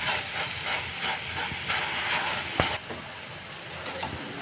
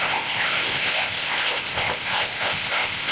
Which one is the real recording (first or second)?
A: first